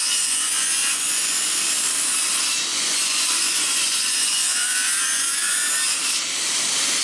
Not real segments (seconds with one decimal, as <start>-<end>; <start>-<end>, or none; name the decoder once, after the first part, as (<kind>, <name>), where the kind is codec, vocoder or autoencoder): 0.0-1.5 (vocoder, Vocos); 2.7-5.7